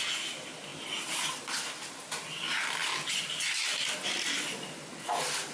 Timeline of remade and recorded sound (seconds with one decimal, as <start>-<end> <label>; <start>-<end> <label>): 0.0-2.8 recorded; 2.8-4.9 remade; 4.9-5.5 recorded